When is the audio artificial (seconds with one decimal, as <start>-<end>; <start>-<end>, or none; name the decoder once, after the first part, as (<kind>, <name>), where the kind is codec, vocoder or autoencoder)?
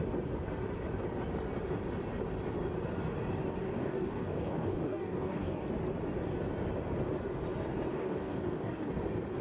3.6-5.7 (codec, DAC); 7.9-8.9